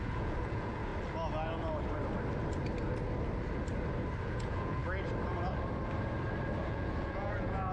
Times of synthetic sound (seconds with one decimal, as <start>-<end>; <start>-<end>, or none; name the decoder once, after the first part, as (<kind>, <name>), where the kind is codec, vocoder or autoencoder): 0.0-0.9 (vocoder, Vocos); 4.2-4.8; 6.7-7.7